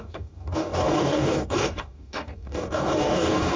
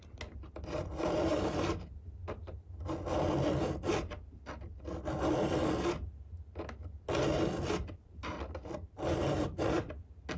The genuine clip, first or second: second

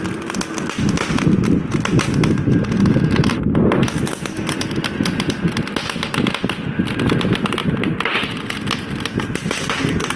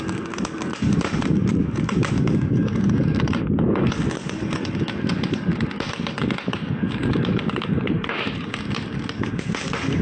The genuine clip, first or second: first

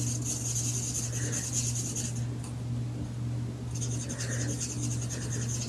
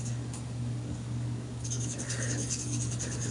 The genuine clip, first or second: first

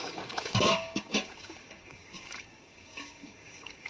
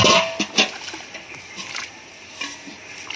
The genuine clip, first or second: second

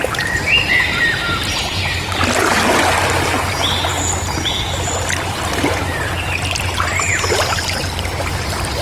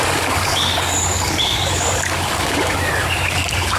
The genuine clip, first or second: first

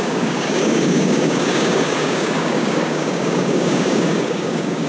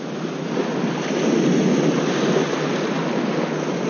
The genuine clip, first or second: second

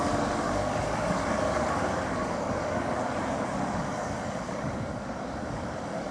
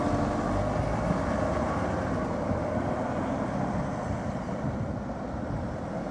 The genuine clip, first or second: second